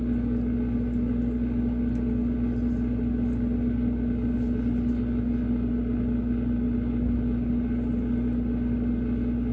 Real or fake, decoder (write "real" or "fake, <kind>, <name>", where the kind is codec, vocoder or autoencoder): real